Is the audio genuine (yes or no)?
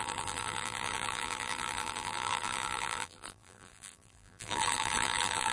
no